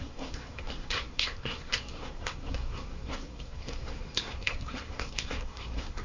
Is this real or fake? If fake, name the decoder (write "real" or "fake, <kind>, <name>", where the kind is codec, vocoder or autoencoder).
fake, codec, SNAC